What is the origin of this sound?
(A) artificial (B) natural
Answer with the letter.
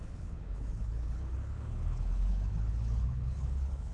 A